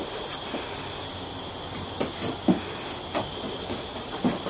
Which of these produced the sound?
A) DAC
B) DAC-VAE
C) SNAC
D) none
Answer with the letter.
D